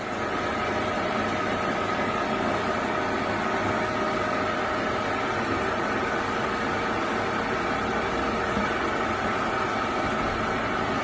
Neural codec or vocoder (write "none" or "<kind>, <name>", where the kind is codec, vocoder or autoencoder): none